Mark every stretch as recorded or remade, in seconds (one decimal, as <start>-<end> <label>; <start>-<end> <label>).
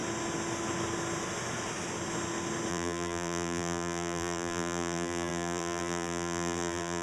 0.0-2.7 recorded; 2.7-7.0 remade